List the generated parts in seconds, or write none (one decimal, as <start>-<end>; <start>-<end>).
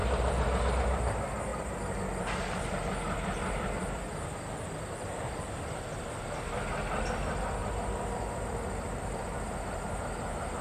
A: 1.5-2.0; 7.6-10.0